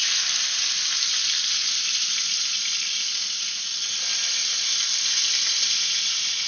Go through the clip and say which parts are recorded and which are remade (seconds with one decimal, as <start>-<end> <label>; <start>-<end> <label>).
0.0-1.1 remade; 1.1-1.6 recorded; 1.6-3.8 remade; 3.8-6.5 recorded